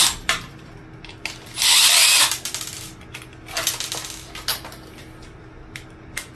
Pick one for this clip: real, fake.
real